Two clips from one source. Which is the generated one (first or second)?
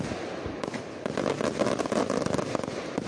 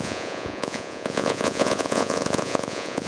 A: second